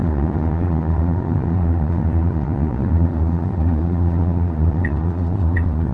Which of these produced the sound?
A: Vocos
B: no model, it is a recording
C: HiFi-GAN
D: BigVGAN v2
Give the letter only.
A